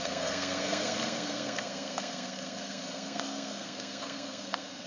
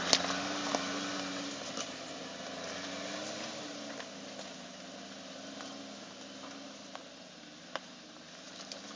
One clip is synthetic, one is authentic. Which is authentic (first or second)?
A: second